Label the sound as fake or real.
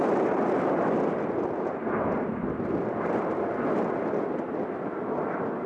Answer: real